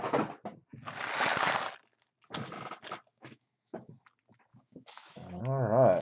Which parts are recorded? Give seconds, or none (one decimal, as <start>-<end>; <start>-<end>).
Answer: 0.0-3.1; 3.9-4.5; 5.4-6.0